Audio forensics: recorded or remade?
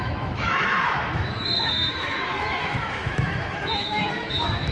remade